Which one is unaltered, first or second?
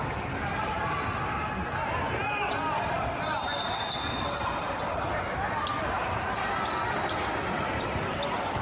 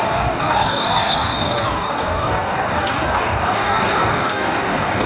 first